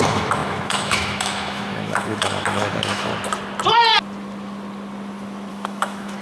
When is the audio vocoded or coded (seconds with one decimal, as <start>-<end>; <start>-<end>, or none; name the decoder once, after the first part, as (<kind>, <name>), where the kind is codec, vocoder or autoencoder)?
0.0-3.1 (autoencoder, DAC-VAE); 5.5-6.2